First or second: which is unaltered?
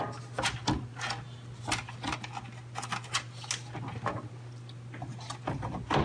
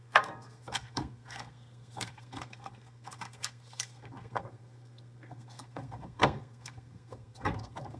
first